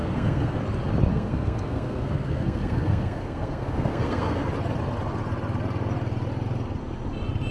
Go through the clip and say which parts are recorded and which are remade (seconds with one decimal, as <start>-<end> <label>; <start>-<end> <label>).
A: 0.0-0.6 remade; 0.6-1.1 recorded; 1.1-4.4 remade; 4.4-7.5 recorded